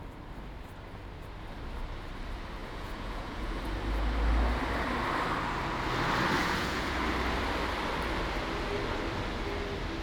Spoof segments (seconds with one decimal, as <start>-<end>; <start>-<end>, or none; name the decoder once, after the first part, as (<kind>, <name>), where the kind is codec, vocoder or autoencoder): 2.6-3.6 (vocoder, Vocos); 6.4-7.0